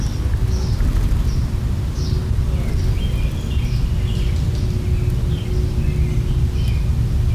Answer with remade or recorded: recorded